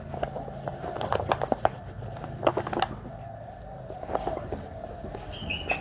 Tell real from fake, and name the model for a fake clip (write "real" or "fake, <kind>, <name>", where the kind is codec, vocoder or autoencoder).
real